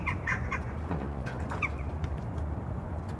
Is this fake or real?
fake